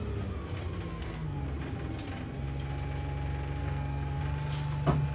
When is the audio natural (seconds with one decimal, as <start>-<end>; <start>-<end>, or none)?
0.0-0.9; 1.4-3.6; 4.2-5.1